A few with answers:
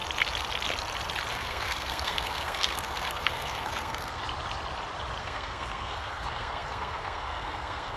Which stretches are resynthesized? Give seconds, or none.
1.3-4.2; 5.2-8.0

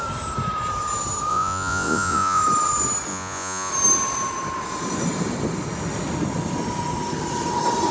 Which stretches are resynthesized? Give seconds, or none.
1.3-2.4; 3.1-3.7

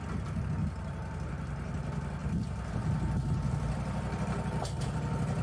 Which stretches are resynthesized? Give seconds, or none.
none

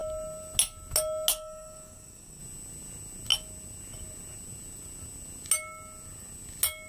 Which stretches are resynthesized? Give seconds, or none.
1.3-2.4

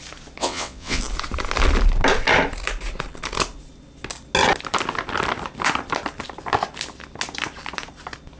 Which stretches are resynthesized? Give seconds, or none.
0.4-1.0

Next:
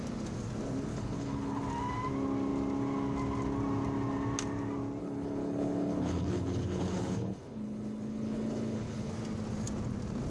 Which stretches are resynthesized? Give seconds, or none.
0.9-1.6; 5.0-9.1